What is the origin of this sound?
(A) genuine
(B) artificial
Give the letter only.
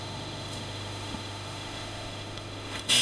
B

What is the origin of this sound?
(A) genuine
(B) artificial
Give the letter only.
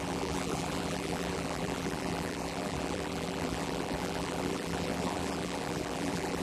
B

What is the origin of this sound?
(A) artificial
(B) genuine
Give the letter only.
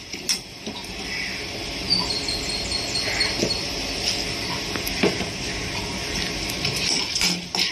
B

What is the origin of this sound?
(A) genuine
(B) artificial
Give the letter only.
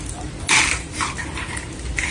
A